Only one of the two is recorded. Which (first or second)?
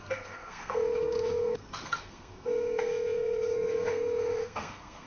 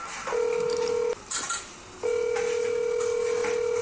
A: second